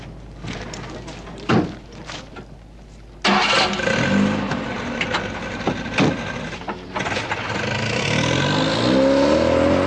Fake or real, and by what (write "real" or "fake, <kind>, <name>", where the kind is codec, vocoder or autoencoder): real